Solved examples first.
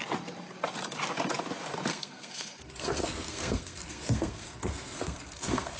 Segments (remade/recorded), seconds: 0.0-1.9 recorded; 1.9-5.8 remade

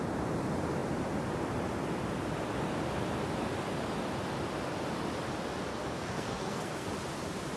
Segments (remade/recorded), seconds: 0.0-5.7 recorded; 5.7-6.9 remade; 6.9-7.6 recorded

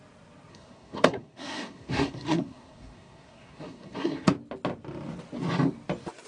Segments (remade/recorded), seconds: 0.0-0.5 recorded; 0.5-4.3 remade; 4.3-6.3 recorded

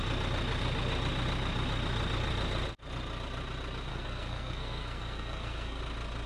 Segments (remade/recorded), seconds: 0.0-3.9 recorded; 3.9-5.8 remade; 5.8-6.3 recorded

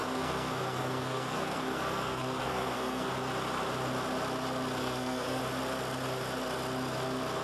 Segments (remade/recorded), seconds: 0.0-3.1 remade; 3.1-4.8 recorded; 4.8-5.4 remade; 5.4-7.4 recorded

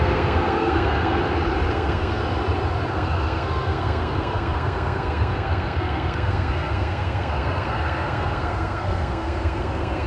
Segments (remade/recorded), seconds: 0.0-1.2 remade; 1.2-1.7 recorded; 1.7-2.2 remade; 2.2-2.9 recorded; 2.9-10.1 remade

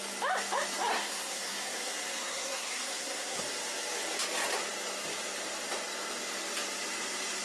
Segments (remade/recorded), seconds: 0.0-0.9 recorded; 0.9-3.4 remade; 3.4-7.4 recorded

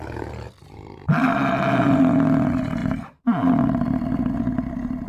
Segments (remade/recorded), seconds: 0.0-5.1 recorded